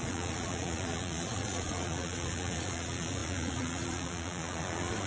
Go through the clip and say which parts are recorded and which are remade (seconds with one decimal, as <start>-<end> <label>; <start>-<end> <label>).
0.0-5.1 remade